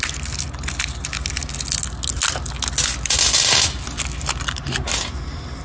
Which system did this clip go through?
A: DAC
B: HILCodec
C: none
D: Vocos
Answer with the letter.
C